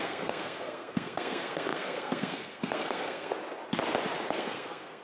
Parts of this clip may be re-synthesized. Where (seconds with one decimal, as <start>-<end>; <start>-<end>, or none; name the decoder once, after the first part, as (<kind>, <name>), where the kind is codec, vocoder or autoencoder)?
0.0-3.3 (codec, SNAC); 4.3-5.0